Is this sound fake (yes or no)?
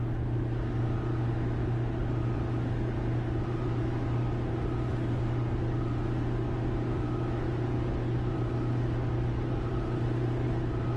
no